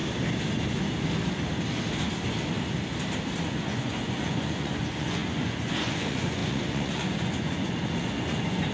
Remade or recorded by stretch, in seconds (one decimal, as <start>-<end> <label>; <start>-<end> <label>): 0.0-3.4 recorded; 3.4-8.7 remade